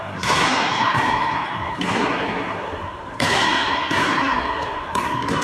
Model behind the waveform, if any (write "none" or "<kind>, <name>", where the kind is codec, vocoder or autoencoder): codec, SNAC